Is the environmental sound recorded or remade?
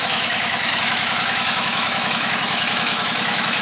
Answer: remade